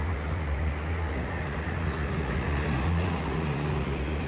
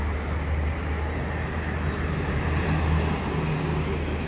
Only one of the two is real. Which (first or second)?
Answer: second